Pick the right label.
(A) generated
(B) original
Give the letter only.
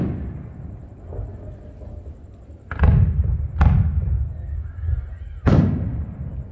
B